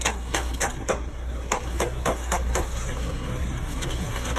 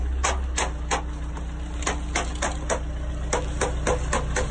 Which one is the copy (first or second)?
first